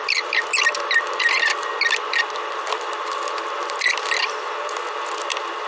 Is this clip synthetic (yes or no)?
yes